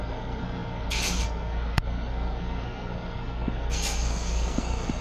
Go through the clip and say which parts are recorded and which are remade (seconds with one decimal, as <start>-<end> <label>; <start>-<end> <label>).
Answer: 0.0-5.0 remade